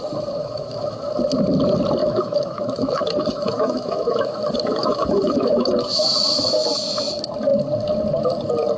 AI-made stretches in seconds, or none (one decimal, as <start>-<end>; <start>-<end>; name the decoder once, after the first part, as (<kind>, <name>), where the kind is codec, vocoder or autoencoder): 0.4-1.1 (autoencoder, DAC-VAE); 2.0-7.1